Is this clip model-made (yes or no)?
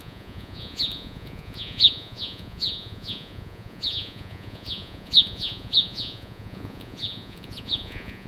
yes